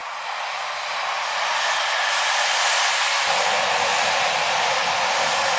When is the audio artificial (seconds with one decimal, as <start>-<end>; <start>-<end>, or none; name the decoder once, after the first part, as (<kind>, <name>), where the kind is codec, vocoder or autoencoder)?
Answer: none